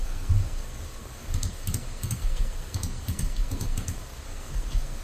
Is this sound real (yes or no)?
no